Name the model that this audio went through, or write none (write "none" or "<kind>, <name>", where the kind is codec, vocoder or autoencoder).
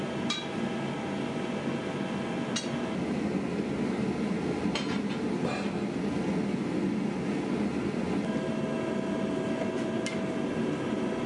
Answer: none